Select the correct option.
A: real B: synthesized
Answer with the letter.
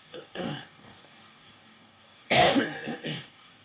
B